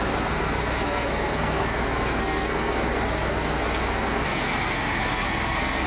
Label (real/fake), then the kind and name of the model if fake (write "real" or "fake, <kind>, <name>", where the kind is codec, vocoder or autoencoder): fake, codec, SNAC